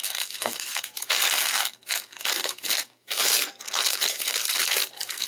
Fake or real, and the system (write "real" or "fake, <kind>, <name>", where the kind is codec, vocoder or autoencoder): fake, codec, SNAC